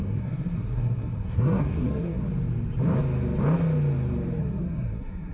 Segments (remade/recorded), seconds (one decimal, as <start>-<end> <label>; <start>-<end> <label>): 0.0-2.2 remade; 2.2-4.4 recorded; 4.4-5.3 remade